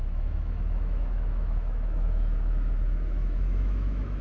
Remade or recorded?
remade